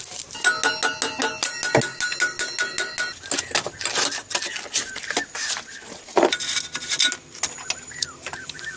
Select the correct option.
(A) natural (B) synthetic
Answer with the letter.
A